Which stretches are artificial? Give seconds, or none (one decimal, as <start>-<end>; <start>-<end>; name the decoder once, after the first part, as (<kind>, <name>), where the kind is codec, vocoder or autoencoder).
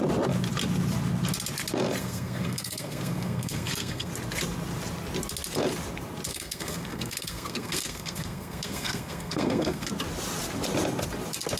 2.0-4.1 (codec, SNAC); 6.3-9.9